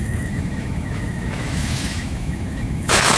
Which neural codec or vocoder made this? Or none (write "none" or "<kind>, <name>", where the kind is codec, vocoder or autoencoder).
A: autoencoder, DAC-VAE